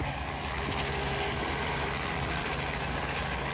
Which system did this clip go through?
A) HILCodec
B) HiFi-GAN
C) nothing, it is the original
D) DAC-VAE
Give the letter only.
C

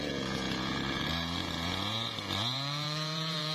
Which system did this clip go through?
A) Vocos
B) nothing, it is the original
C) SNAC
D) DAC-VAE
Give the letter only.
A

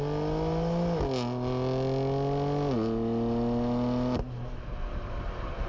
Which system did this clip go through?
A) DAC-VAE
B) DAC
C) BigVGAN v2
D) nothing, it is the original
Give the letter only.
D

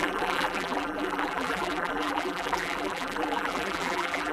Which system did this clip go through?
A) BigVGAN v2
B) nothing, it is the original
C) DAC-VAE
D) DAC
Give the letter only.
A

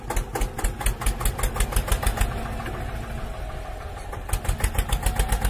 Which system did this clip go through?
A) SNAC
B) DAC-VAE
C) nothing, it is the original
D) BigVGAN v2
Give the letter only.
C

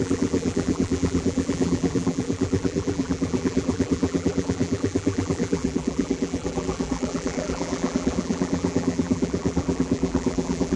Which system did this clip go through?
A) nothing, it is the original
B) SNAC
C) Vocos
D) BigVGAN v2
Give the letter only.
D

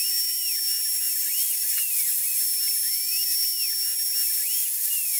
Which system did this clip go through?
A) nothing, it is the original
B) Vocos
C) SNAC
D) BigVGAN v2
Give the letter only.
A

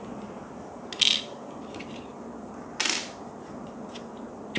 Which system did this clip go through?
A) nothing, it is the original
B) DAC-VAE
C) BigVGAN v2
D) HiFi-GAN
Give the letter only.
A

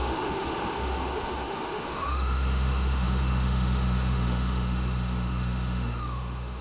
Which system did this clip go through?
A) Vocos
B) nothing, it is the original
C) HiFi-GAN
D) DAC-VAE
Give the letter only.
D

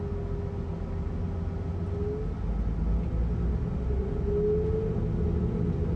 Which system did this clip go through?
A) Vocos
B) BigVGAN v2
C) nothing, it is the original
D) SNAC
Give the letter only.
C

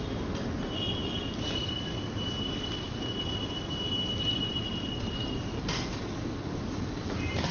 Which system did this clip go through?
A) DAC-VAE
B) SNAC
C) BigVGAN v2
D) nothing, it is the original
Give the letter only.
D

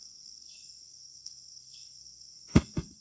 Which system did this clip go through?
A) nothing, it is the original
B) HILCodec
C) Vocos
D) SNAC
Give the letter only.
D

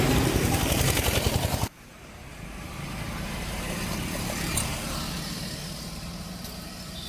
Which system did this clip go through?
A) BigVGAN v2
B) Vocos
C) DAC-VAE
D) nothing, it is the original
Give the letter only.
A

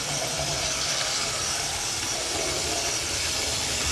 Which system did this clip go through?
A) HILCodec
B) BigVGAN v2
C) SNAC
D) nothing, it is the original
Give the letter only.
B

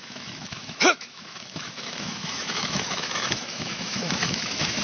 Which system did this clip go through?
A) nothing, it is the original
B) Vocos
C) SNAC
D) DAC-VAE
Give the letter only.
D